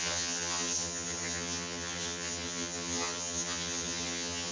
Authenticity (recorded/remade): remade